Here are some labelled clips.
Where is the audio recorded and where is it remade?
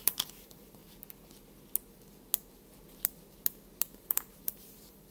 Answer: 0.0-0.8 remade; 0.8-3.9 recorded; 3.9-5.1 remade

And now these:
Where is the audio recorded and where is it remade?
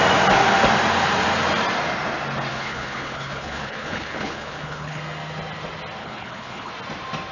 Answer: 0.0-2.5 recorded; 2.5-5.0 remade; 5.0-6.0 recorded; 6.0-6.7 remade; 6.7-7.3 recorded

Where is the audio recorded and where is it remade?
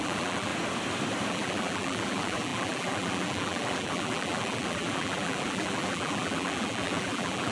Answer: 0.0-0.5 remade; 0.5-1.3 recorded; 1.3-7.5 remade